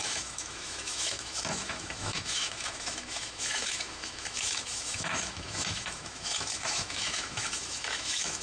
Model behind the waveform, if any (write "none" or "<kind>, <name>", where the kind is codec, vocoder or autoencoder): autoencoder, DAC-VAE